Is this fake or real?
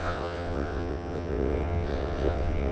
fake